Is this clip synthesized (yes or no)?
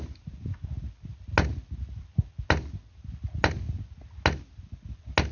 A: no